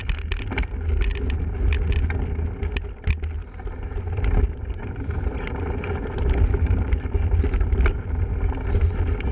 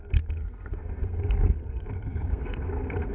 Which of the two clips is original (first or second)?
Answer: first